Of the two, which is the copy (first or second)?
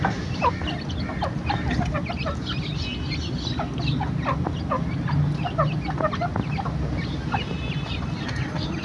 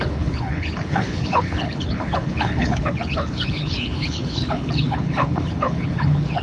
second